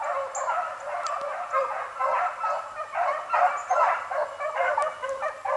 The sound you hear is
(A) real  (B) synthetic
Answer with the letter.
A